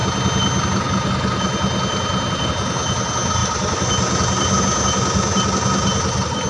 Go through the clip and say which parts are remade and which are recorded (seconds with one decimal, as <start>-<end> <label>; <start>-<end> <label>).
0.0-6.5 recorded